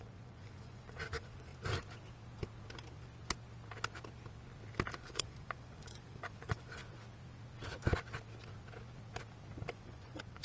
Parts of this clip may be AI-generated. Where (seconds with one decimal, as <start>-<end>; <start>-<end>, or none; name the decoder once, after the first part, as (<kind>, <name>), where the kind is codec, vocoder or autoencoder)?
0.0-1.5 (vocoder, Vocos); 4.9-6.8; 9.7-10.4